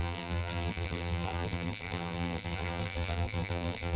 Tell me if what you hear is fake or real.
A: fake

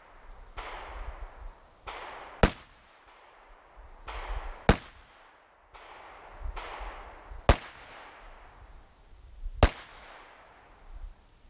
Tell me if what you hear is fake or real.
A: real